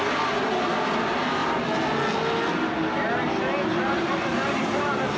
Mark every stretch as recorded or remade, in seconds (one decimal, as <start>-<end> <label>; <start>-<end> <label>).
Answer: 0.0-1.4 remade; 1.4-4.0 recorded; 4.0-5.2 remade